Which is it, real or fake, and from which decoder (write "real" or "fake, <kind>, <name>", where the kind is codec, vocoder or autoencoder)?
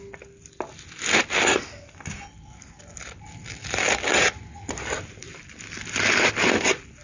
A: real